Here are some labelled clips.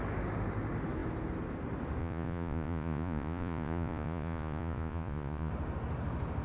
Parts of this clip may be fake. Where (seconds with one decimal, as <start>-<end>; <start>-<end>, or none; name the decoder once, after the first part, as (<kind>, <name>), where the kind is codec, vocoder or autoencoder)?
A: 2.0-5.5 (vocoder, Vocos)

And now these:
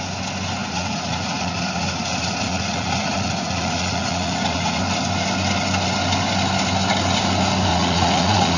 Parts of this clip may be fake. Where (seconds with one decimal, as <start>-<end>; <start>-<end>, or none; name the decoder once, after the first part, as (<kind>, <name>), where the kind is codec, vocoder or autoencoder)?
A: 0.6-4.8 (vocoder, Vocos); 7.7-8.6

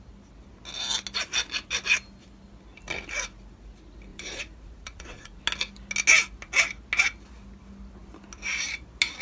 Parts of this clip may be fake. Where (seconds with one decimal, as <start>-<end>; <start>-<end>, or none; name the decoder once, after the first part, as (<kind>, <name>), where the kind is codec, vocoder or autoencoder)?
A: 4.1-5.4 (vocoder, Vocos)

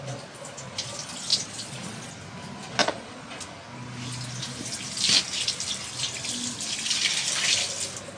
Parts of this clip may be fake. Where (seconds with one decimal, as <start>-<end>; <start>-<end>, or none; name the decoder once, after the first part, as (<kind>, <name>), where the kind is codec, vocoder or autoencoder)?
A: 1.3-2.1 (vocoder, Vocos); 2.8-3.4

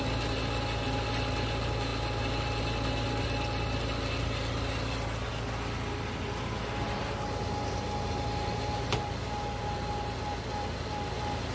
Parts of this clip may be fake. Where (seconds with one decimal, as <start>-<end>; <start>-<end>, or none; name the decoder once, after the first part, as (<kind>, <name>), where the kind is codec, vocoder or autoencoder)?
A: none

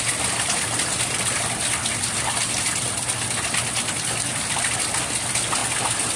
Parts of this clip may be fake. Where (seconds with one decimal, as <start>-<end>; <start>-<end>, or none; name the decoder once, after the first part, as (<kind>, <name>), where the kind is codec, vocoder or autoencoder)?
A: none

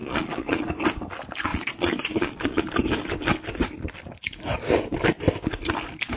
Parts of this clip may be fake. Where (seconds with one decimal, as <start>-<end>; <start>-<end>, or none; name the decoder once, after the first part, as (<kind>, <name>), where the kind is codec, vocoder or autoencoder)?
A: 0.0-0.7 (vocoder, Vocos); 1.5-2.6

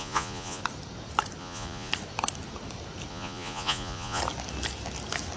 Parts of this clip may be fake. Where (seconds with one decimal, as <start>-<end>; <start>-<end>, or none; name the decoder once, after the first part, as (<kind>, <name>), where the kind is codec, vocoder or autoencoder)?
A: 0.0-0.6 (vocoder, Vocos); 1.4-1.9; 3.1-4.2